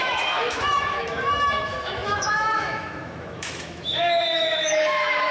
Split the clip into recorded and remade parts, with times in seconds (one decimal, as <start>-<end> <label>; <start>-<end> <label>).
0.0-5.3 remade